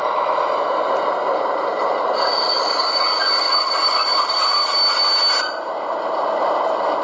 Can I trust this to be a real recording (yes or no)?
yes